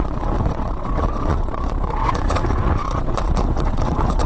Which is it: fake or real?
fake